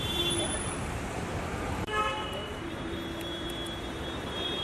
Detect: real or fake fake